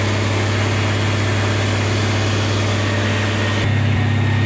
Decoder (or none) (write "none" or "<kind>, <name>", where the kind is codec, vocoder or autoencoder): none